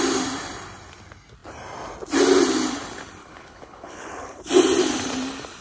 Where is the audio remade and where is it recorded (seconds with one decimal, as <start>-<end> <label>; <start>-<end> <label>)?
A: 0.0-3.2 recorded; 3.2-4.4 remade; 4.4-5.6 recorded